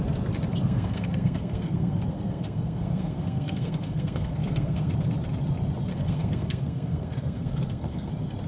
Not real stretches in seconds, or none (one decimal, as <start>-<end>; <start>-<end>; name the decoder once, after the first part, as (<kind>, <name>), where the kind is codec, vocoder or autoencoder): 0.6-4.9 (codec, SNAC); 5.9-8.1